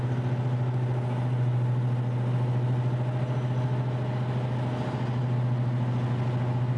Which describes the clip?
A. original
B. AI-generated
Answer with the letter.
A